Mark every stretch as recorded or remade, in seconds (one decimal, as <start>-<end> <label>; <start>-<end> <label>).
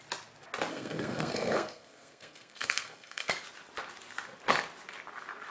0.0-0.7 recorded; 0.7-3.3 remade; 3.3-5.5 recorded